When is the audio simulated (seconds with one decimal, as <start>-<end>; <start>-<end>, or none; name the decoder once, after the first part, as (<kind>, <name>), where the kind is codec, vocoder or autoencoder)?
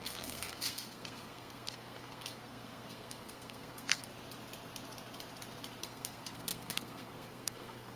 0.0-4.1 (codec, SNAC); 5.8-8.0